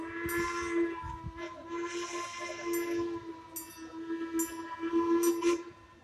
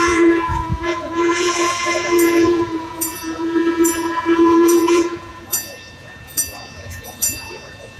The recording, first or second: first